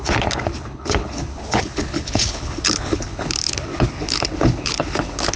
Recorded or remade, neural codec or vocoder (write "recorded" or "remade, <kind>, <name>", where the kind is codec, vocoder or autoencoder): remade, codec, HILCodec